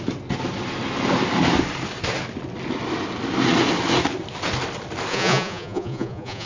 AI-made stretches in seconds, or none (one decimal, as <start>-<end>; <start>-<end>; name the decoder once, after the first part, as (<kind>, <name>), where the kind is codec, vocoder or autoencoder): 5.1-6.5 (vocoder, Vocos)